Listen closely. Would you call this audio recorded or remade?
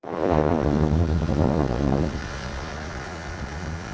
remade